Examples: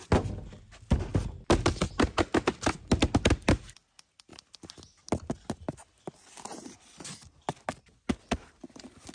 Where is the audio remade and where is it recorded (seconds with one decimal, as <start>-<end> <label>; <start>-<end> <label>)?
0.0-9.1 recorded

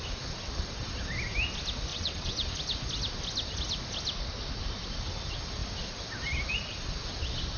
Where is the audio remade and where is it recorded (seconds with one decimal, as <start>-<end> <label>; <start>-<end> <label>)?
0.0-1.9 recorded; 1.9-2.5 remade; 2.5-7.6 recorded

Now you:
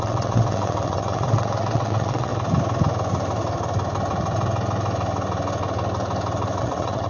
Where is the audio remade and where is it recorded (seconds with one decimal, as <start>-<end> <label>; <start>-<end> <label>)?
0.0-2.3 remade; 2.3-6.6 recorded; 6.6-7.1 remade